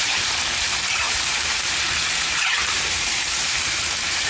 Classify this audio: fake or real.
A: fake